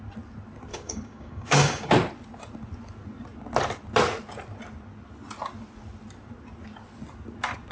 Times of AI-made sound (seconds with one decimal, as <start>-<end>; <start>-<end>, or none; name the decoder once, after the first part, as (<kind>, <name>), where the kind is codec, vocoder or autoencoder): 0.7-1.9 (codec, DAC)